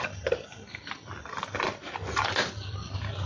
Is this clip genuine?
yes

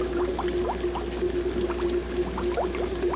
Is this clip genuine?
yes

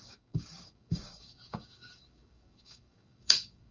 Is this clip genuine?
no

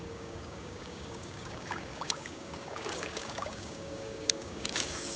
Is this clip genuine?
no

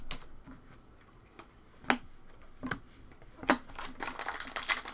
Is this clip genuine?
yes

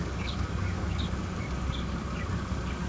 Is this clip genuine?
no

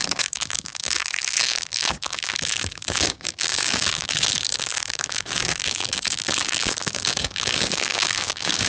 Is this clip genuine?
no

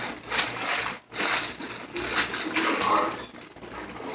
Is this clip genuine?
yes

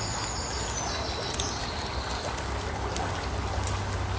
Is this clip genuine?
yes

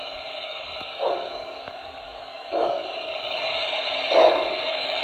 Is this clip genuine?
no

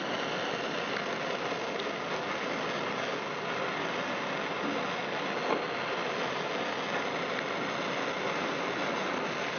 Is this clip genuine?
yes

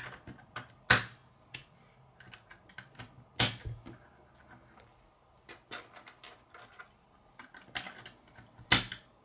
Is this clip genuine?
yes